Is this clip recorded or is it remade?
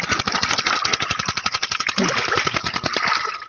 recorded